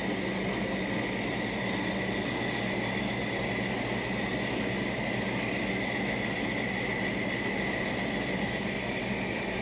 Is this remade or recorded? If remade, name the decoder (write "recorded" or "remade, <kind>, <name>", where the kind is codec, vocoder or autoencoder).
recorded